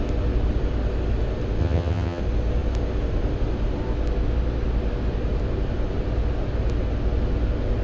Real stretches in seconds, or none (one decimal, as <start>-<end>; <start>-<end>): 0.0-1.6; 2.2-7.8